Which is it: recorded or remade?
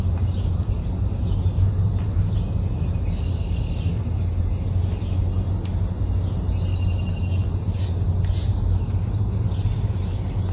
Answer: recorded